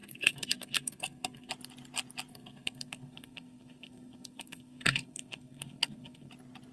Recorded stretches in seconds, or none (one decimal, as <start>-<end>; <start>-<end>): 1.5-2.3; 6.3-6.7